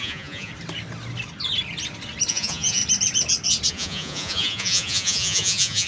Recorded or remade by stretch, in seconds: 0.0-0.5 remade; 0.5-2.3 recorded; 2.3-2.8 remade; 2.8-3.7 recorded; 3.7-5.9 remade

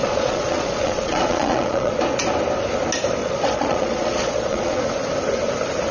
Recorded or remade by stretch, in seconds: 0.0-1.9 remade; 1.9-3.2 recorded; 3.2-4.8 remade; 4.8-5.9 recorded

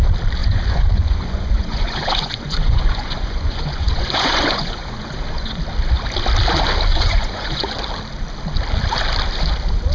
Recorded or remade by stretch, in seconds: 0.0-0.4 recorded; 0.4-5.6 remade; 5.6-6.9 recorded; 6.9-7.7 remade; 7.7-9.9 recorded

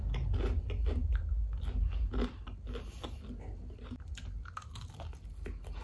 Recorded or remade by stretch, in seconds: 0.0-5.8 recorded

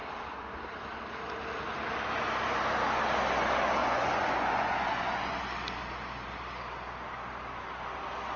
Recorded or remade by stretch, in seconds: 0.0-3.8 recorded; 3.8-5.4 remade; 5.4-8.4 recorded